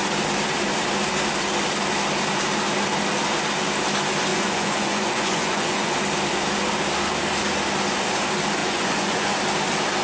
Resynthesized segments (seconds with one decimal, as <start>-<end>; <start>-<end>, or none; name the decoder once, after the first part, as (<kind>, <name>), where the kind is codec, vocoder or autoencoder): 4.3-5.9 (vocoder, Vocos); 8.6-9.3